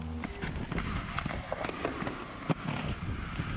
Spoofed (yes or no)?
no